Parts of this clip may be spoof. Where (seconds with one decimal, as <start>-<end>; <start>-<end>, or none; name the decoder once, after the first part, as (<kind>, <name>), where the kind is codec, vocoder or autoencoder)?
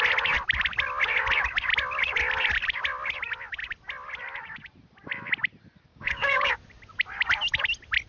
5.9-6.5 (codec, DAC)